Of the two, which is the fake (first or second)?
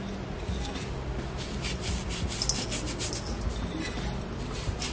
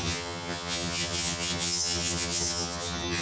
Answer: second